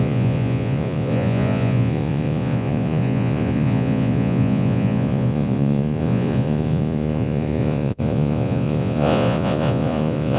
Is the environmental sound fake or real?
fake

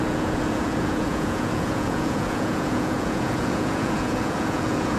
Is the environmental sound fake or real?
fake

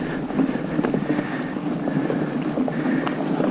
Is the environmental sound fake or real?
real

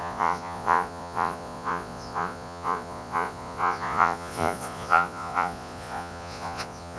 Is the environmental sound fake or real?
fake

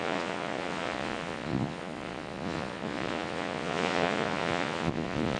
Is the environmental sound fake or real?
fake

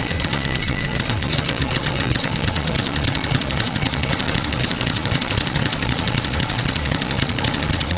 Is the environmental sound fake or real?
fake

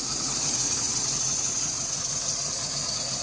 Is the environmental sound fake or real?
fake